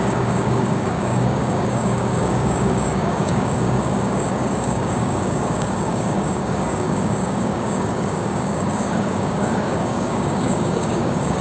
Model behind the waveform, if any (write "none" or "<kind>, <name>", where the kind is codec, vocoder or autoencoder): codec, DAC